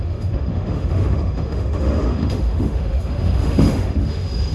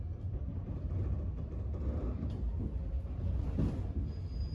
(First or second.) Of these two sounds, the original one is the second